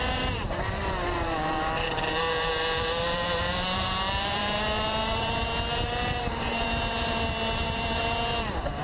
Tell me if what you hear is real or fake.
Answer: fake